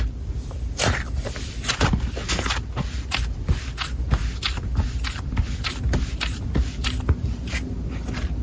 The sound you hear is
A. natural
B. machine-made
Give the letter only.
A